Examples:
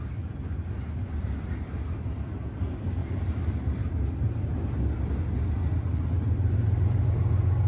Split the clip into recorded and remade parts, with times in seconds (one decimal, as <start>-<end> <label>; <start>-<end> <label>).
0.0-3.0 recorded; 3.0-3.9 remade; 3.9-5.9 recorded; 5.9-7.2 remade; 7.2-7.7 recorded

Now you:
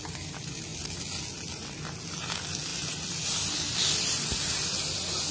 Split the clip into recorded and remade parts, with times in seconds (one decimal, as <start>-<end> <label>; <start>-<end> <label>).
0.0-5.3 recorded

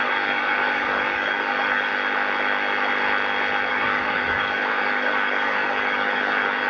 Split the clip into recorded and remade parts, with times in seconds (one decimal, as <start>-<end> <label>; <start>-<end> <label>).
0.0-1.9 remade; 1.9-3.7 recorded; 3.7-6.7 remade